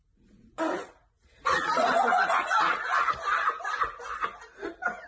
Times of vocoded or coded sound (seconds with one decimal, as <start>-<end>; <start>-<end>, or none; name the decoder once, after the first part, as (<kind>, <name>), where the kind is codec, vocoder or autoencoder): 0.0-3.1 (vocoder, Vocos)